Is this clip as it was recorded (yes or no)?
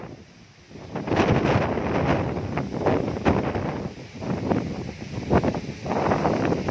yes